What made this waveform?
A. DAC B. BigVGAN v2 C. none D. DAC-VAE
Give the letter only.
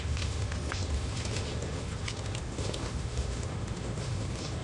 D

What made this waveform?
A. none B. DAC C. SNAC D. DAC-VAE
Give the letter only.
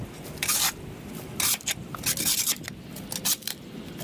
A